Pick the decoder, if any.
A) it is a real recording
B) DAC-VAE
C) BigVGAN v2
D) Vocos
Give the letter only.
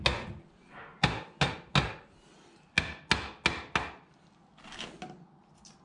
A